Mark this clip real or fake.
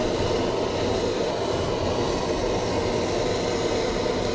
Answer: real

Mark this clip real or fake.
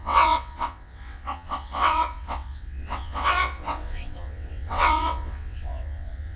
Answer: fake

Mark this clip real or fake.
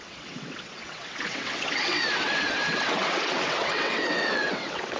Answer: fake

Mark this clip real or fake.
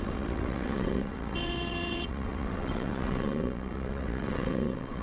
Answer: fake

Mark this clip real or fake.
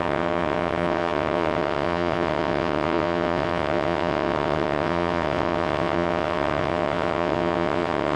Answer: fake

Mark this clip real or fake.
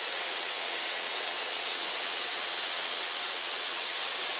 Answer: fake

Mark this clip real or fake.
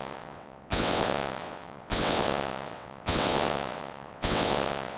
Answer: fake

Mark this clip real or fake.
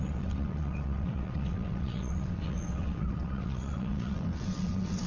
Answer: fake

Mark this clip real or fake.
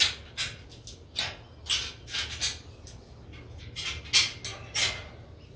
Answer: real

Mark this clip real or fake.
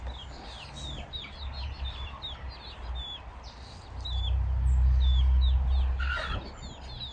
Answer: real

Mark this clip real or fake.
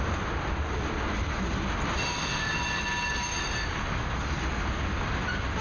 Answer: real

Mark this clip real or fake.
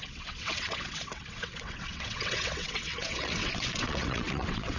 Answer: fake